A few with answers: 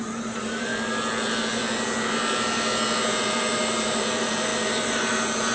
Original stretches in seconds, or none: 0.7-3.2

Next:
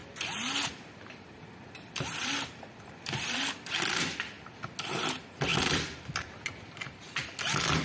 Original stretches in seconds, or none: 4.7-5.5; 6.1-7.8

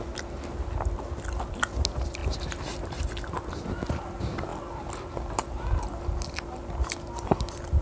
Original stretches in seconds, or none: 0.0-2.2; 3.0-7.8

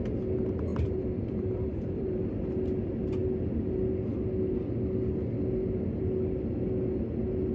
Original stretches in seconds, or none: 0.0-0.7; 2.2-7.5

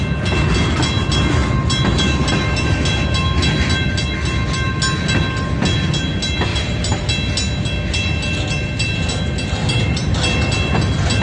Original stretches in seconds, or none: 0.0-6.5; 7.0-9.6; 10.1-11.2

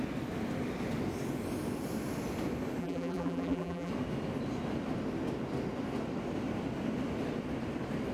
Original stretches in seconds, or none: 0.0-2.8; 3.9-8.1

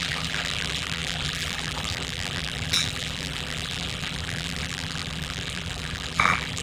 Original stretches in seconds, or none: none